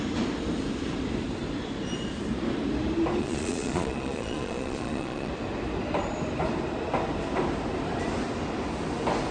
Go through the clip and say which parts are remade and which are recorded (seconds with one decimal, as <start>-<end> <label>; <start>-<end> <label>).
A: 0.0-3.2 recorded; 3.2-5.3 remade; 5.3-9.3 recorded